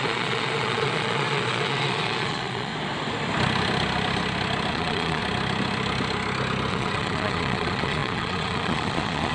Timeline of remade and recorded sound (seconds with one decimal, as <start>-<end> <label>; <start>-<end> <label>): 0.0-2.7 remade; 2.7-4.7 recorded; 4.7-5.2 remade; 5.2-6.7 recorded; 6.7-9.3 remade